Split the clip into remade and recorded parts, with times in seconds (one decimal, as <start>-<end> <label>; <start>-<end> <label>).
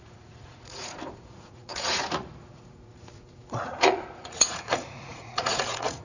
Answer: 0.0-6.0 remade